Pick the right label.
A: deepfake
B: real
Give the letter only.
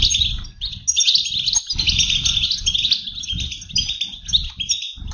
B